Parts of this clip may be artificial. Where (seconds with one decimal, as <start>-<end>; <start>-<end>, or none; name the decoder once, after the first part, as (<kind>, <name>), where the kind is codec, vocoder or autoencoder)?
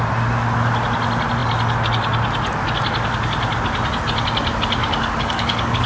4.8-5.9 (codec, DAC)